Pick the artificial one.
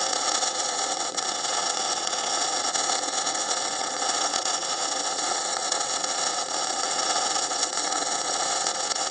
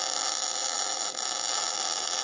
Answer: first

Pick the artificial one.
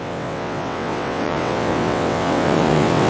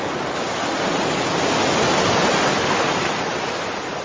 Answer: first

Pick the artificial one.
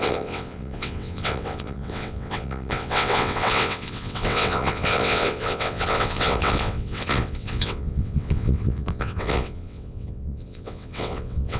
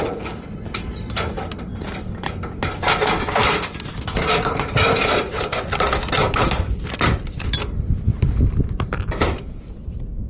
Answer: first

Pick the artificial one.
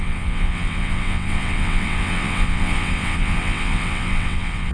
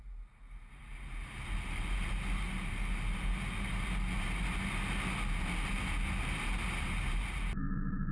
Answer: first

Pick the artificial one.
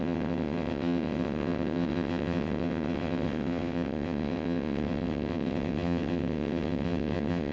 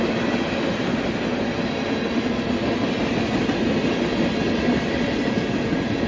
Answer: first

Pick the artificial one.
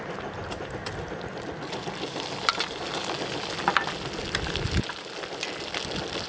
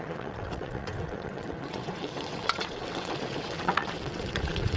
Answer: second